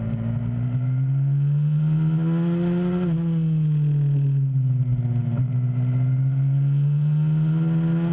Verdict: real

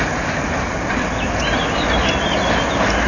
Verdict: real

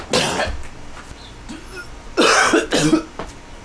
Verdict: real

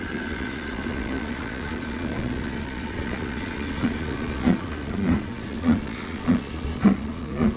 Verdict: fake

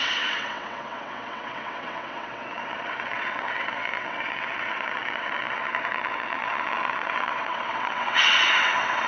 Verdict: fake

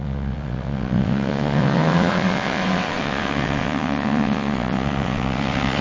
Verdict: fake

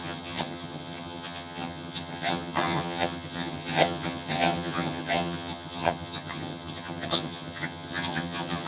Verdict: fake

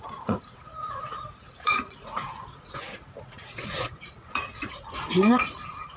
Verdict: fake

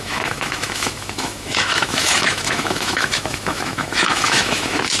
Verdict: fake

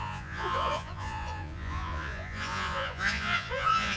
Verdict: fake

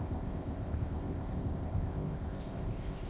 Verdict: fake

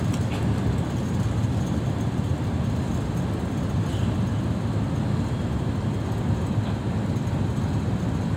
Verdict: real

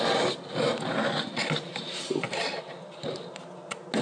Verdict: real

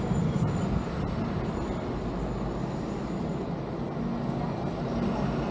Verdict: real